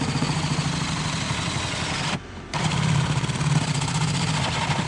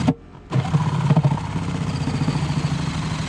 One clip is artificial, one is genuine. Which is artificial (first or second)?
first